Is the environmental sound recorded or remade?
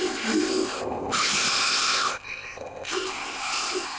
remade